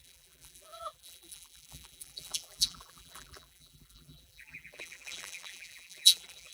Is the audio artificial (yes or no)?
yes